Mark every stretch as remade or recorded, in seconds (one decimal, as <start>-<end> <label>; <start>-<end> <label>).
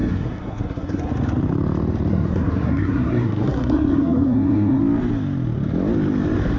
0.0-1.1 remade; 1.1-2.1 recorded; 2.1-4.8 remade; 4.8-6.6 recorded